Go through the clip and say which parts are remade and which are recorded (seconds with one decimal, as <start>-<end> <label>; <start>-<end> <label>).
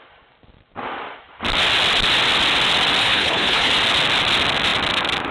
0.0-3.0 recorded; 3.0-3.7 remade; 3.7-5.3 recorded